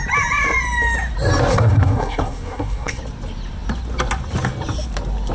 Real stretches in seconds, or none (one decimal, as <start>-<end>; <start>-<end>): 0.0-1.5; 3.0-5.3